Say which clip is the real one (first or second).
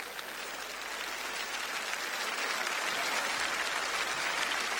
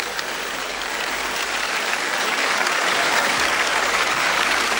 first